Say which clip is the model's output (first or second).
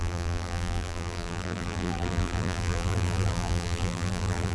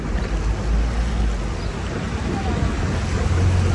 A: first